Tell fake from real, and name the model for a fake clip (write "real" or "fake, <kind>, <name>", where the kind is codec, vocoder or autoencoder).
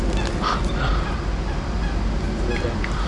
real